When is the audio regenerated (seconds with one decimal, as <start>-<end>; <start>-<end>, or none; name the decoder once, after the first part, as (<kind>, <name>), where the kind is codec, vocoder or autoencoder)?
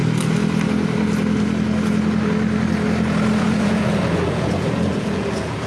3.4-5.7 (vocoder, Vocos)